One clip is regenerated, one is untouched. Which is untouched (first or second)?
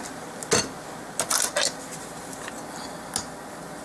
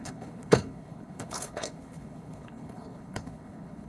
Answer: first